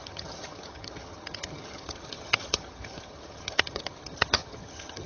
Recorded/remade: remade